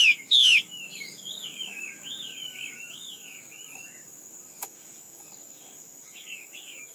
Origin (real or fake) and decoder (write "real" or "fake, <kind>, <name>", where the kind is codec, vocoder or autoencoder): fake, codec, DAC